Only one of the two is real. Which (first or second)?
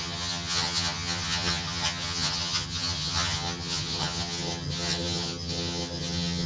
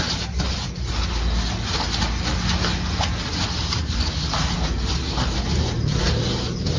second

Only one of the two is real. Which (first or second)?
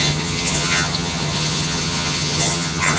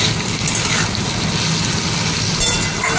second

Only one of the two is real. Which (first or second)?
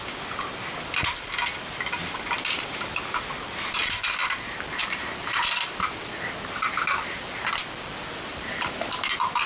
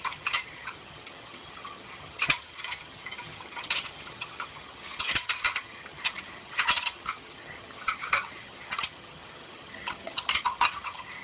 first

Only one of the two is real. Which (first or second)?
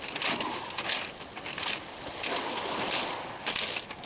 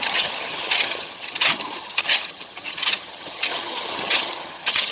first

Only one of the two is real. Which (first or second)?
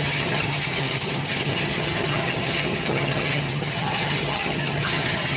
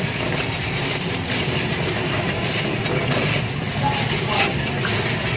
second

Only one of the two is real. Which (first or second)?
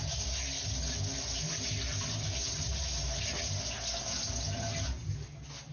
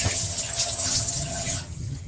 first